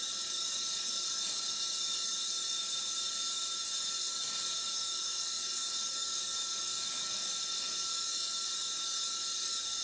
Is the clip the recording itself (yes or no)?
no